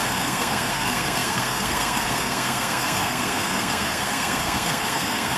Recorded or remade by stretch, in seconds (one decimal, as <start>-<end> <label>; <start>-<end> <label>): 0.0-5.4 remade